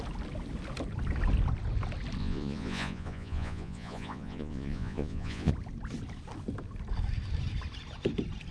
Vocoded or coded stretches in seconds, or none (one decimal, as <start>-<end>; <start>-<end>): 2.2-5.5